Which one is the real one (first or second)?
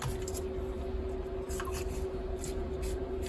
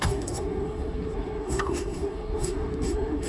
first